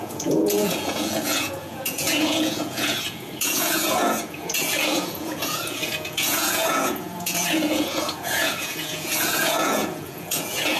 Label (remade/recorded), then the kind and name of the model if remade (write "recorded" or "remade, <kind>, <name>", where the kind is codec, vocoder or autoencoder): remade, vocoder, Vocos